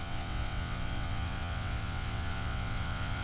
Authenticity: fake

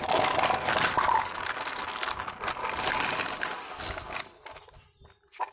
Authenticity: real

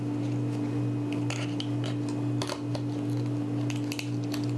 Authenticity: real